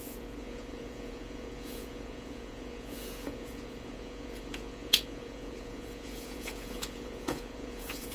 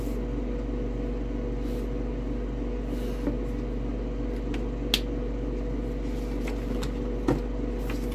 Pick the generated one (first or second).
first